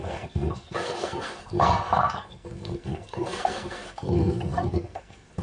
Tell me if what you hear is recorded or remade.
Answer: remade